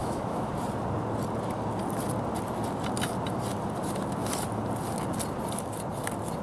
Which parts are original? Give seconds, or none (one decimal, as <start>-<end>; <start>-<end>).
0.5-6.4